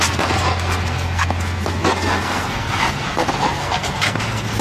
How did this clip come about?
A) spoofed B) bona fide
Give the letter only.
A